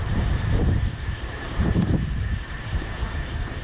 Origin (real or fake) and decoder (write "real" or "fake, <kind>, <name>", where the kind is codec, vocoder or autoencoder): fake, vocoder, BigVGAN v2